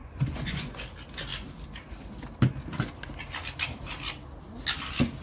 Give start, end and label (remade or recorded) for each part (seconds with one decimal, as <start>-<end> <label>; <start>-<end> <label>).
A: 0.0-0.8 remade; 0.8-5.2 recorded